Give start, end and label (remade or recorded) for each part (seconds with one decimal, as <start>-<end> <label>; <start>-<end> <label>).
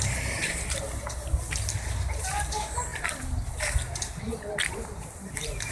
0.0-5.7 recorded